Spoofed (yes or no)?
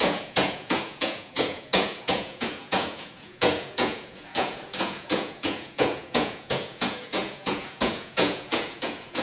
yes